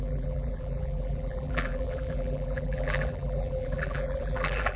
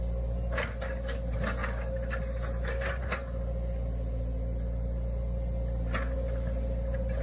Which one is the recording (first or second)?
second